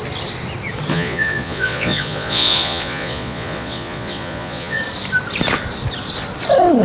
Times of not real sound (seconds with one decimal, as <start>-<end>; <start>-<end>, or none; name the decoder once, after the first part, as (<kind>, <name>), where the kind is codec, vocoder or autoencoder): 0.9-4.8 (vocoder, Vocos)